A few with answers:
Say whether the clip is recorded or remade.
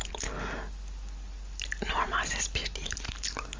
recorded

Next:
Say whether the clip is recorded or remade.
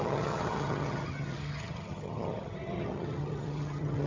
remade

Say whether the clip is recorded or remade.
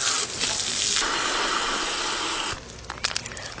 recorded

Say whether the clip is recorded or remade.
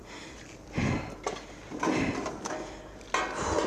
recorded